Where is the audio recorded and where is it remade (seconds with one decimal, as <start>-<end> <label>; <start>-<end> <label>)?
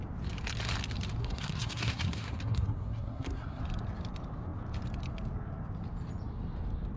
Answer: 0.0-1.2 recorded; 1.2-3.6 remade; 3.6-7.0 recorded